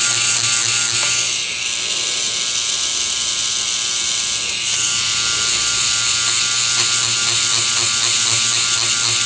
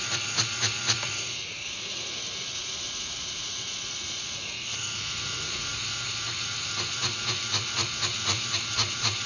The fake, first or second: second